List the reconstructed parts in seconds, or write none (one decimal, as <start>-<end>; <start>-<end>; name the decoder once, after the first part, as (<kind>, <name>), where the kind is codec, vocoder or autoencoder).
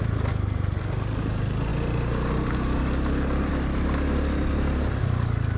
none